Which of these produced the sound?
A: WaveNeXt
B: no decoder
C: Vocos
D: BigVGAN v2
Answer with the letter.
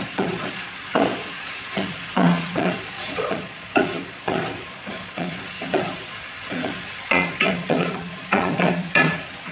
C